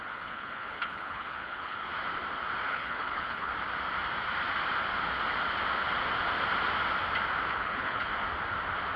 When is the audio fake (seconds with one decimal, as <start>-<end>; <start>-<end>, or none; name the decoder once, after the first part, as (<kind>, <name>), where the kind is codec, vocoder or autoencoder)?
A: 0.0-1.9 (codec, HILCodec); 2.7-3.5; 7.5-8.1